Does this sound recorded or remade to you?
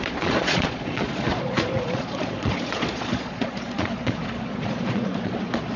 remade